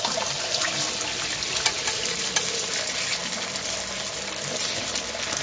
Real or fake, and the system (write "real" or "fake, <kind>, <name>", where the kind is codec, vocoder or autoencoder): real